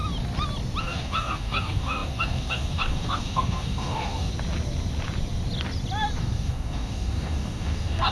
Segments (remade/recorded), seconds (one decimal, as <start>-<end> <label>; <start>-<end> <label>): 0.0-0.8 recorded; 0.8-4.3 remade; 4.3-6.2 recorded; 6.2-8.1 remade

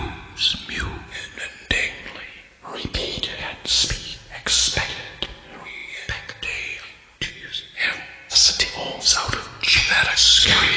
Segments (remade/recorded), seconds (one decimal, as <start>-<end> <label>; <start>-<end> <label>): 0.0-10.8 recorded

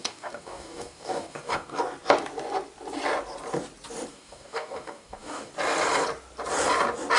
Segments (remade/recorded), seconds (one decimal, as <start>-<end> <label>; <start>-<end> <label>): 0.0-1.8 remade; 1.8-4.1 recorded; 4.1-5.5 remade; 5.5-7.2 recorded

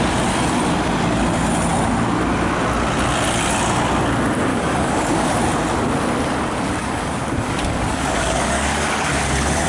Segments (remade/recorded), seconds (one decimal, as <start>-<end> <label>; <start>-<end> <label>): 0.0-4.5 recorded; 4.5-5.3 remade; 5.3-6.8 recorded; 6.8-9.1 remade; 9.1-9.7 recorded

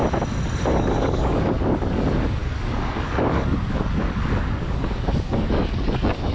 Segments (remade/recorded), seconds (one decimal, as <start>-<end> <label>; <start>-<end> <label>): 0.0-0.7 recorded; 0.7-6.3 remade

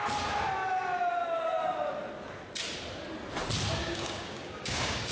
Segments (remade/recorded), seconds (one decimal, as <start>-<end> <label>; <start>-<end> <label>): 0.0-3.8 recorded; 3.8-5.1 remade